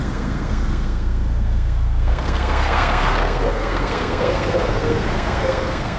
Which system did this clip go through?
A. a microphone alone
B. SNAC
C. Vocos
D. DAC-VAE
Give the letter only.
B